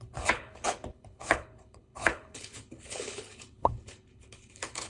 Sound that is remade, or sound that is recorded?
remade